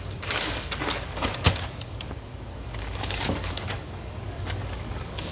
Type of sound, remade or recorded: remade